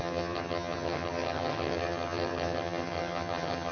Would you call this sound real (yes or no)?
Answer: no